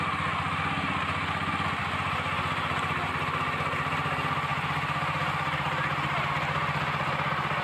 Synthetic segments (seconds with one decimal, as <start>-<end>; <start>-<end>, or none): 1.8-3.1; 4.5-6.3